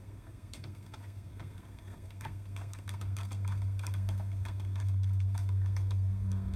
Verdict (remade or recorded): remade